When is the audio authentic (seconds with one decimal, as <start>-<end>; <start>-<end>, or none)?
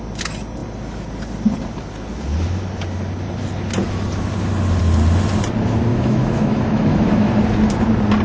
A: 0.0-5.9; 7.3-8.2